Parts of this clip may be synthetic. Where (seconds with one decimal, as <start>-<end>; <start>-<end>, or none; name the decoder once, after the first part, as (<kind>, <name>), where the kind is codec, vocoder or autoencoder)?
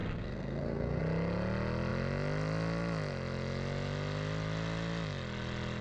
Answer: 0.0-1.0 (codec, SNAC)